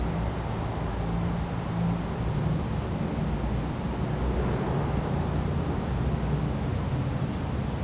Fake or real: real